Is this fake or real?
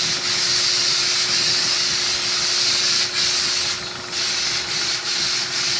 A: real